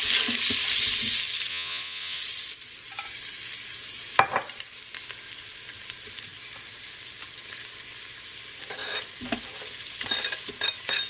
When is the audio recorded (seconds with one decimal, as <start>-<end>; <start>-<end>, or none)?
0.0-1.5; 2.2-11.1

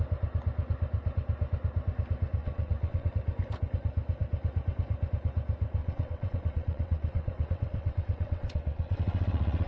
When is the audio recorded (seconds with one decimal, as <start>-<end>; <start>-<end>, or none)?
0.0-2.4; 3.1-5.8

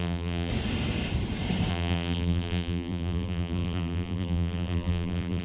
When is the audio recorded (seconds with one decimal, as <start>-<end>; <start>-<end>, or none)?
0.5-1.7

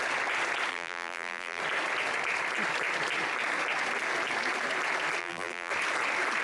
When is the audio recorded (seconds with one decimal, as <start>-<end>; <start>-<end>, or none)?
0.0-0.7; 1.6-5.2; 5.7-6.4

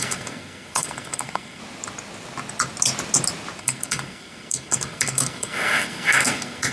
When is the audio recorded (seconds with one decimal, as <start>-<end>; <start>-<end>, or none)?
1.6-3.6